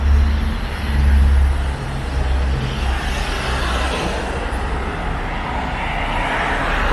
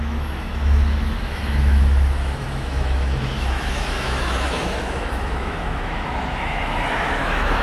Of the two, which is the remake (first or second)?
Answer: second